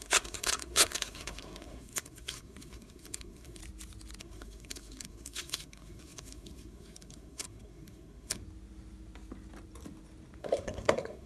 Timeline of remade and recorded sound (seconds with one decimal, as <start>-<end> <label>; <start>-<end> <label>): 0.0-3.6 remade; 3.6-4.2 recorded; 4.2-8.4 remade; 8.4-10.4 recorded; 10.4-11.3 remade